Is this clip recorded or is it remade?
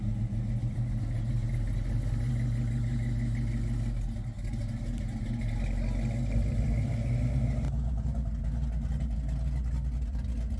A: recorded